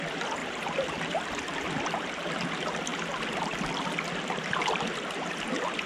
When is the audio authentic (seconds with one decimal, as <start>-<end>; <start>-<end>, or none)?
0.0-0.4; 1.2-5.9